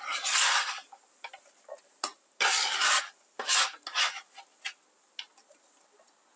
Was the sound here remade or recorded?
recorded